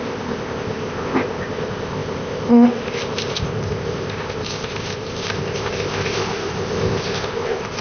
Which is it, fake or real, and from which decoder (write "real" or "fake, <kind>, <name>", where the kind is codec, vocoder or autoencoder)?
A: fake, codec, ZipCodec